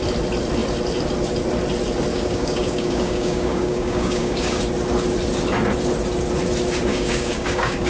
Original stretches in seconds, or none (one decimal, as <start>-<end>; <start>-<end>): 0.0-2.1; 4.6-6.9